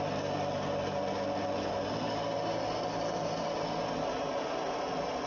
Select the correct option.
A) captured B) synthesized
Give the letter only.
A